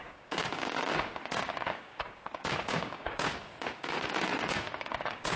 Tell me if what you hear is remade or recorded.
remade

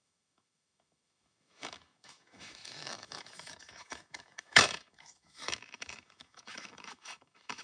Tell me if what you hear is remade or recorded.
remade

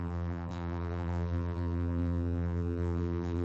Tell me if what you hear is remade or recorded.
remade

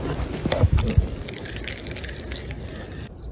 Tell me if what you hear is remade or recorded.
recorded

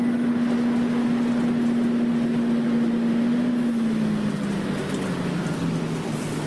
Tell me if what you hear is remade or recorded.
recorded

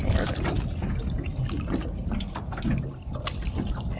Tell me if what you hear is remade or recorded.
recorded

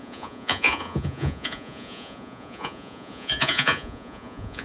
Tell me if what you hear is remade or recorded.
remade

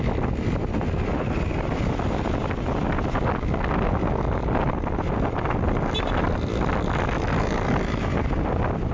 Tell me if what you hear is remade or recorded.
recorded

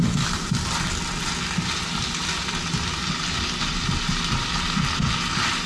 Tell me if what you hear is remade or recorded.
recorded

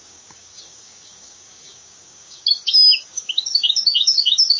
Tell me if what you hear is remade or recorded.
remade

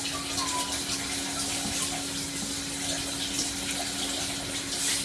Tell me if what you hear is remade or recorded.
recorded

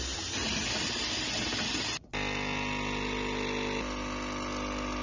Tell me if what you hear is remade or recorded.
recorded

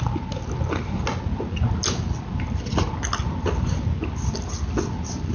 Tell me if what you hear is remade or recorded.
recorded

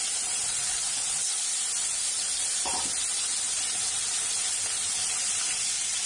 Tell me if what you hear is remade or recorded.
recorded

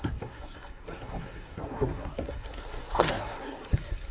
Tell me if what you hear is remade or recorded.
remade